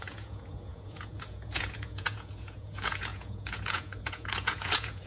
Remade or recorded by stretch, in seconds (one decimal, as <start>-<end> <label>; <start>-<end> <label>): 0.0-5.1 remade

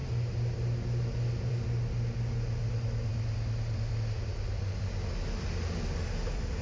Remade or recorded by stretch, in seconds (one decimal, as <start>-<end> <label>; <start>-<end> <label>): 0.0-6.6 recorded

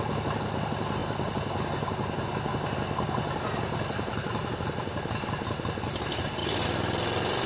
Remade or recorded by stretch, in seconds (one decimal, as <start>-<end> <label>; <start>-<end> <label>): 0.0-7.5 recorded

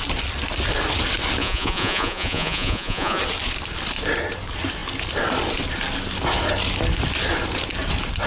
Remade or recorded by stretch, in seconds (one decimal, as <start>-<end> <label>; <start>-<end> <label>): 0.0-1.4 recorded; 1.4-3.2 remade; 3.2-8.3 recorded